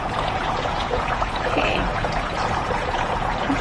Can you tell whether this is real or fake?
fake